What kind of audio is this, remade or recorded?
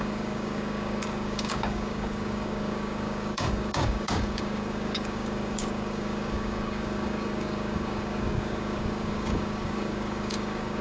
remade